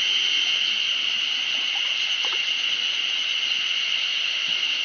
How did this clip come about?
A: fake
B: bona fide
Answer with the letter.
B